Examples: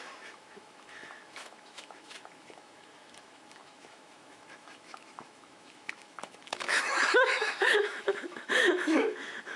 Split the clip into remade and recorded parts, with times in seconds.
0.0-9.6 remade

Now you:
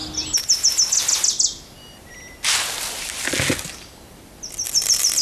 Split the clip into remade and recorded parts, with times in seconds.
0.0-5.2 recorded

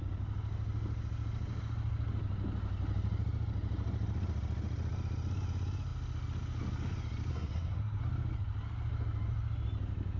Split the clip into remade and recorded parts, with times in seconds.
0.0-7.3 recorded; 7.3-8.0 remade; 8.0-10.2 recorded